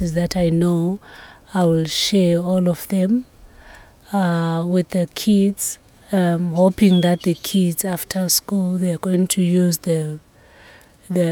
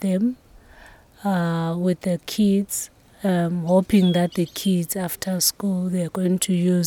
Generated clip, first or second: first